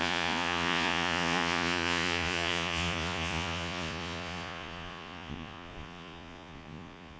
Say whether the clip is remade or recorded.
remade